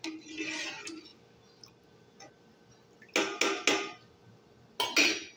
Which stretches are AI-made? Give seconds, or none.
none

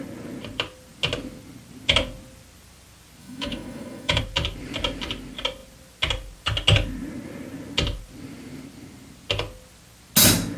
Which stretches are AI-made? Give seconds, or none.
3.2-4.2 (autoencoder, DAC-VAE)

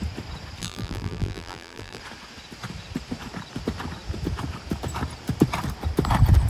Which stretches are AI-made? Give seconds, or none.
0.6-2.0 (vocoder, BigVGAN v2)

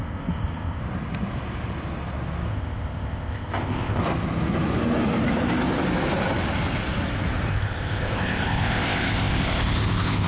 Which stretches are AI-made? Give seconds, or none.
0.0-0.8 (codec, ZipCodec); 2.5-4.0; 7.5-10.3